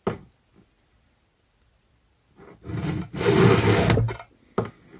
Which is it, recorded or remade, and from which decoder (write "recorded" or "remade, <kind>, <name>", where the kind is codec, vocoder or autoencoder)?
recorded